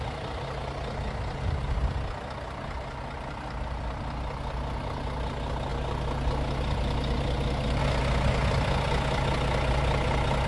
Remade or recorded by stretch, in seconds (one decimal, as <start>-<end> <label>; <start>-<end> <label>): 0.0-10.5 recorded